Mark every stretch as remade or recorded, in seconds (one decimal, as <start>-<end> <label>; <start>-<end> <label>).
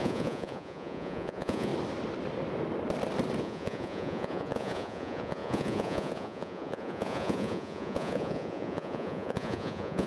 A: 0.0-1.7 remade; 1.7-3.4 recorded; 3.4-10.1 remade